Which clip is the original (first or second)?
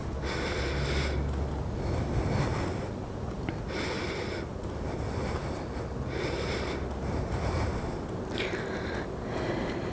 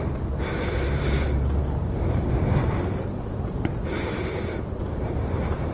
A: first